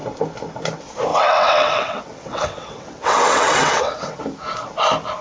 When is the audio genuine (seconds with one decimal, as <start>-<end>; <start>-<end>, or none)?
0.0-1.1; 4.2-5.2